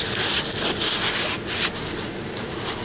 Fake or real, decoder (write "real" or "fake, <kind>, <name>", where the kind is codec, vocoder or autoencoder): real